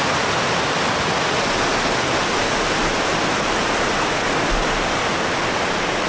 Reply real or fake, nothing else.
real